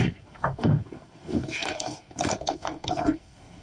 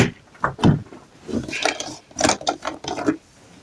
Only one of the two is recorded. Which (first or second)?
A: second